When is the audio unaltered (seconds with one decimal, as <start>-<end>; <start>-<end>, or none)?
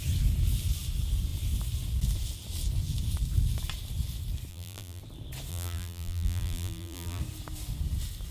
0.0-4.5; 5.0-5.5; 7.2-8.3